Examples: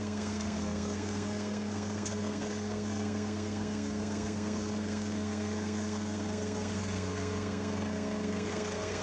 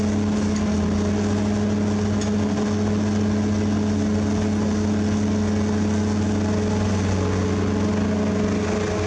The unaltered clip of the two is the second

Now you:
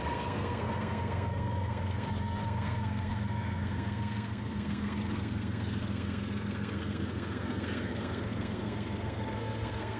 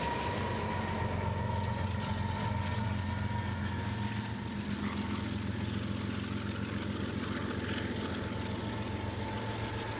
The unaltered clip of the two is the second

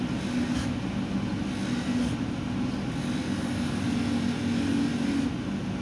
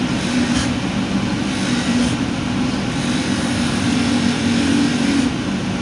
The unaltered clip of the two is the first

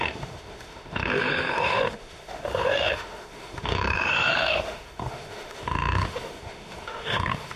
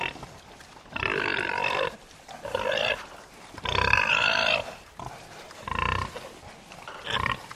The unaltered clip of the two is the second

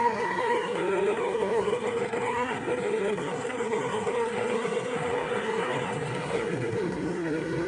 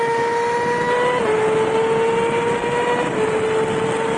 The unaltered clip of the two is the second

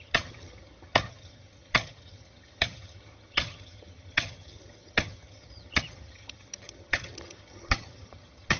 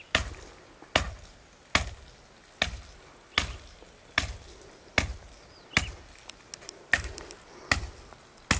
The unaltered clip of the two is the second